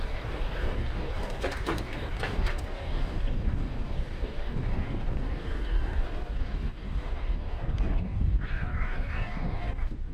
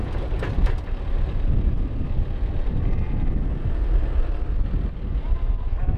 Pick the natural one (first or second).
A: second